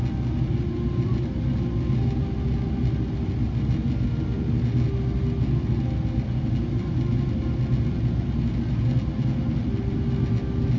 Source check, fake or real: real